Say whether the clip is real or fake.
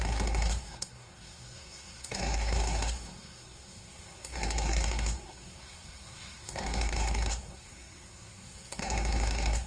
fake